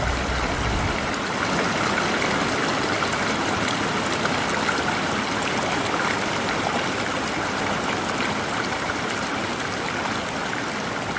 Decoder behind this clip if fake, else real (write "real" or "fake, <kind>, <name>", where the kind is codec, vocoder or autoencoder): real